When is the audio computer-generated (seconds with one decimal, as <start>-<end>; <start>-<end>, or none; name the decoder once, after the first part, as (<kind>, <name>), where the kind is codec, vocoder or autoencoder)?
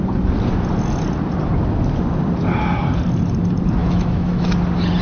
3.8-4.5 (autoencoder, DAC-VAE)